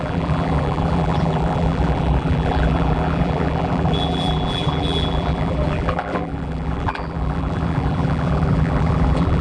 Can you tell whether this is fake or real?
fake